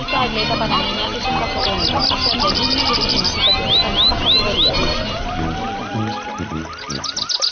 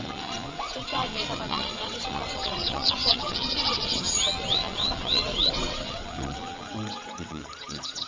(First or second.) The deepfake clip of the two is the second